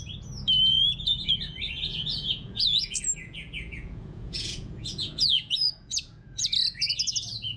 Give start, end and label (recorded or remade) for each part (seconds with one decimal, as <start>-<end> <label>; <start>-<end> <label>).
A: 0.0-0.7 recorded; 0.7-1.4 remade; 1.4-1.9 recorded; 1.9-6.5 remade; 6.5-7.6 recorded